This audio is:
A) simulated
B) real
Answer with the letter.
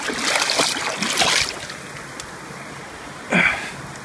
B